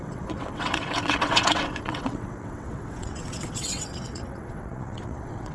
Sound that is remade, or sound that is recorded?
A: remade